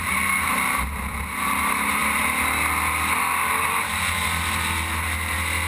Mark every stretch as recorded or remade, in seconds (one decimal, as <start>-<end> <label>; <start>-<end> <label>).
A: 0.0-5.7 recorded